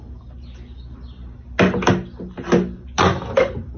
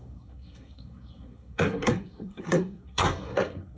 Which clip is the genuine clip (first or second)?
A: first